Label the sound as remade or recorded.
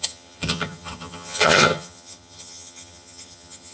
remade